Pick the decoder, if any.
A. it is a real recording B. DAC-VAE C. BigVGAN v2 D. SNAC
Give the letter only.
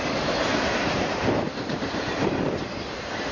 C